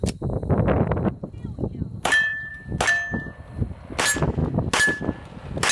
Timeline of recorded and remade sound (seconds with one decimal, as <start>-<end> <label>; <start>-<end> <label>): 0.0-1.9 recorded; 1.9-2.5 remade; 2.5-5.7 recorded